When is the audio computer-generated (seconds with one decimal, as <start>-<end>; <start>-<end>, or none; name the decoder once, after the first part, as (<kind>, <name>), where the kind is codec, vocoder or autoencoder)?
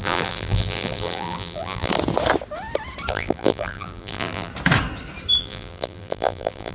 0.0-1.9 (vocoder, BigVGAN v2); 3.1-4.5; 5.4-6.7